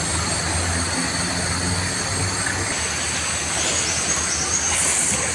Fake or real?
real